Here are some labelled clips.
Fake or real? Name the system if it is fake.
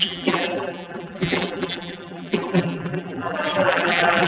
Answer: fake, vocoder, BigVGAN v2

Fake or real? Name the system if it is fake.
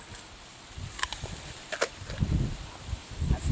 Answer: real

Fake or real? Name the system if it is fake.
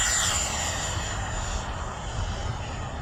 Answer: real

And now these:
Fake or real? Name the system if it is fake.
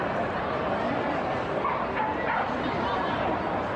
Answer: real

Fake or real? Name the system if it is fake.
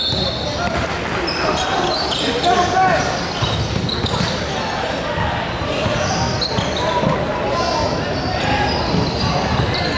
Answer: real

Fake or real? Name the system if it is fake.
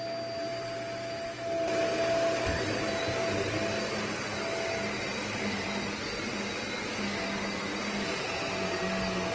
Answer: real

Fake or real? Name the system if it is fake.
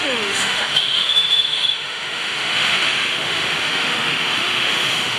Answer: fake, autoencoder, DAC-VAE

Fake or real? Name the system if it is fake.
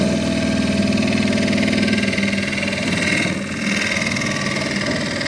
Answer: real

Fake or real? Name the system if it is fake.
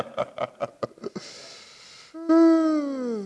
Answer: real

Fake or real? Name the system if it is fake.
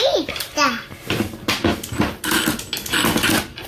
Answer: real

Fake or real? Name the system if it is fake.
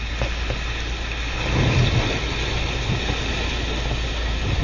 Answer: real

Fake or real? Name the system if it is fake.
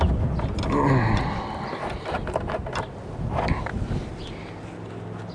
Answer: real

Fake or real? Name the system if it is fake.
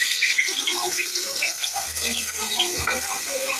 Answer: fake, codec, SNAC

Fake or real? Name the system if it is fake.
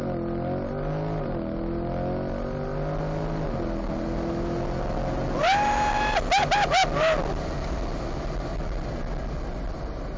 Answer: real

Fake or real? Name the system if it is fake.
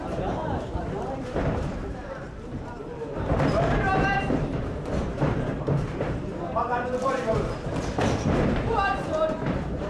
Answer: fake, vocoder, BigVGAN v2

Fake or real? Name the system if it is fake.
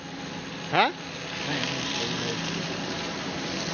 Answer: real